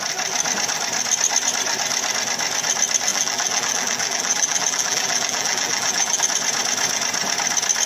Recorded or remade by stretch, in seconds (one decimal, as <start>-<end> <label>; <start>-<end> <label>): 0.0-3.1 recorded; 3.1-6.2 remade; 6.2-7.9 recorded